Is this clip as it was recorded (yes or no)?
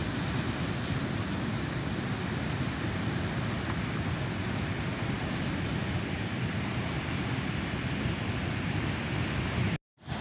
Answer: yes